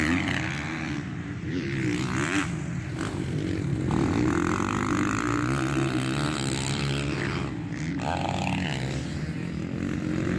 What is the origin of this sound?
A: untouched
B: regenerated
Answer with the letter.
A